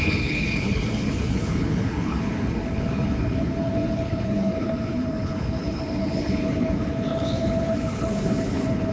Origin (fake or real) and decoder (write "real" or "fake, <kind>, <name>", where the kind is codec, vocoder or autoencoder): fake, codec, HILCodec